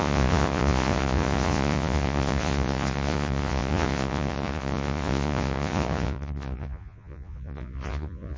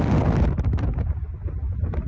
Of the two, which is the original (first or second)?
second